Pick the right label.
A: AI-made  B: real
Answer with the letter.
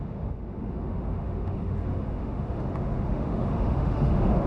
A